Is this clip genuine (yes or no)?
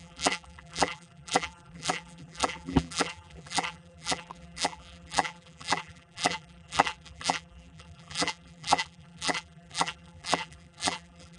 no